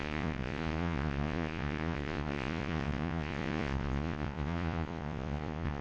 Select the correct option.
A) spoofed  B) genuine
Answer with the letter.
A